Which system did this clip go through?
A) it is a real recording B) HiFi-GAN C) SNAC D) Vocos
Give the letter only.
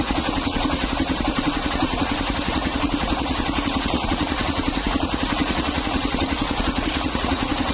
D